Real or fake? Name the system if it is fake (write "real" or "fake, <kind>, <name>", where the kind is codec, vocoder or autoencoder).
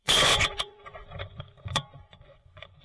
fake, vocoder, Vocos